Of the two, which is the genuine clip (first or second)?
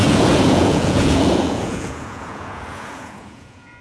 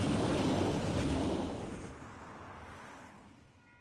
second